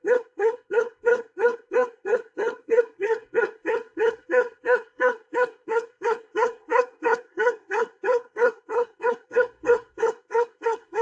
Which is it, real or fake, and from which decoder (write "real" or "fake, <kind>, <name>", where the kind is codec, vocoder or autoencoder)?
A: fake, codec, SNAC